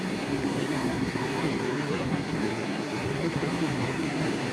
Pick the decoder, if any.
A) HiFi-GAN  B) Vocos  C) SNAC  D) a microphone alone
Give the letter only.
C